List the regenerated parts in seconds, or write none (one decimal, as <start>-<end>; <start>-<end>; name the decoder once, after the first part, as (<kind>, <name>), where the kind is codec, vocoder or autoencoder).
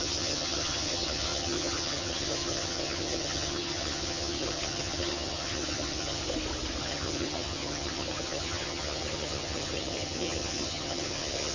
0.0-6.2 (vocoder, HiFi-GAN); 6.8-11.5